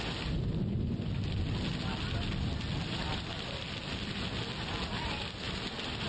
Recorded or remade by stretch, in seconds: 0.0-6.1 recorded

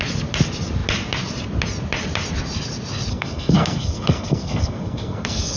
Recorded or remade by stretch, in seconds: 0.0-3.1 recorded; 3.1-5.6 remade

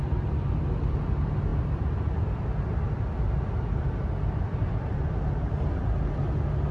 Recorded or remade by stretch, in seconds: 0.0-6.7 recorded

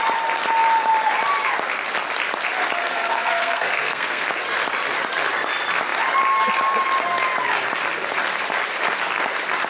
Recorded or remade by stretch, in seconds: 0.0-2.8 recorded; 2.8-4.3 remade; 4.3-9.7 recorded

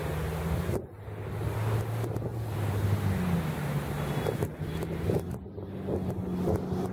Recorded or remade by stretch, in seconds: 0.0-6.9 recorded

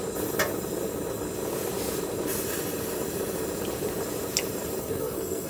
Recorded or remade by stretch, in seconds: 0.0-4.8 recorded; 4.8-5.5 remade